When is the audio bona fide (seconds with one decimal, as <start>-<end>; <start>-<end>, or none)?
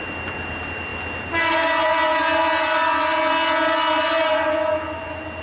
0.0-5.4